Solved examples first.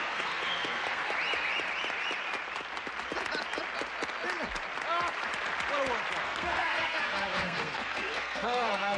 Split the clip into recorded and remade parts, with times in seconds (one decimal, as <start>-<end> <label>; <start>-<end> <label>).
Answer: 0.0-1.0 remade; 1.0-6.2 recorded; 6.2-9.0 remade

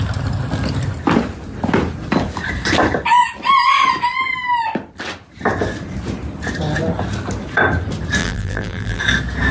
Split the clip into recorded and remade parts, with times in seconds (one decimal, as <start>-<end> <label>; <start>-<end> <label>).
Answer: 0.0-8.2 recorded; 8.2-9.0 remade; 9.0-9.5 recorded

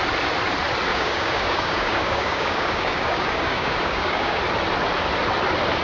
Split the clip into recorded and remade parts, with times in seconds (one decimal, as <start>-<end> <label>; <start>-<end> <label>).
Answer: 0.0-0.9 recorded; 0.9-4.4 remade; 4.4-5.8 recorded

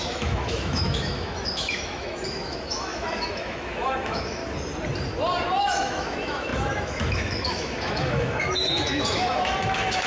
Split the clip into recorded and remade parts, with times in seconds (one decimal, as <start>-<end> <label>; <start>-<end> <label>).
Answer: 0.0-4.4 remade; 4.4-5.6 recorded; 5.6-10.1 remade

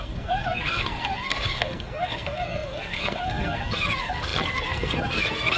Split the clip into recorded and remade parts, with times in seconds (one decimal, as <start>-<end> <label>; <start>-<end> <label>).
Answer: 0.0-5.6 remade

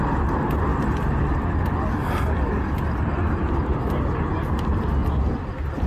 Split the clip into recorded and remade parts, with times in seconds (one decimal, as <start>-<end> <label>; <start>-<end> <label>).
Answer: 0.0-5.9 recorded

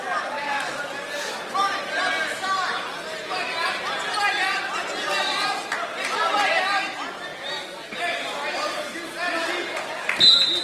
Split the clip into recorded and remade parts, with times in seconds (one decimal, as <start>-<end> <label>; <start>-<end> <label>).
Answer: 0.0-10.6 recorded

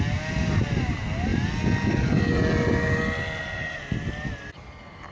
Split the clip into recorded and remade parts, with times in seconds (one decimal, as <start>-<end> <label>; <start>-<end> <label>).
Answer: 0.0-5.1 recorded